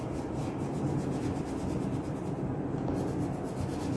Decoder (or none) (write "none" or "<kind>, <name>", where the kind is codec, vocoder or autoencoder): none